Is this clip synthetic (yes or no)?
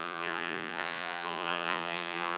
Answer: yes